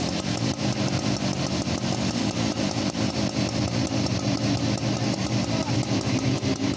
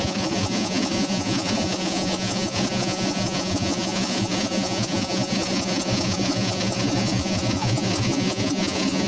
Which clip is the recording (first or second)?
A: first